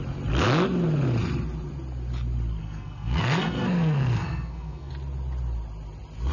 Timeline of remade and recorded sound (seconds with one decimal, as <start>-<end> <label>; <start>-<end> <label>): 0.0-2.6 recorded; 2.6-4.9 remade; 4.9-6.3 recorded